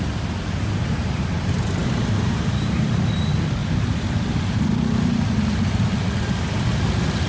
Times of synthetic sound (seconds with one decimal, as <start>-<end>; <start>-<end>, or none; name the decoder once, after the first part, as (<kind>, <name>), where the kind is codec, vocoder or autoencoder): 1.8-3.0 (vocoder, BigVGAN v2)